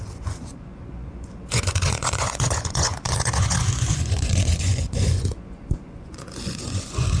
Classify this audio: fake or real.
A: fake